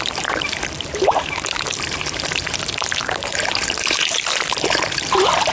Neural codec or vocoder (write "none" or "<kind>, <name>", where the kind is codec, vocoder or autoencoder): vocoder, BigVGAN v2